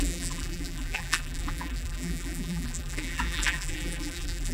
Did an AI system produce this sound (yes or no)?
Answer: yes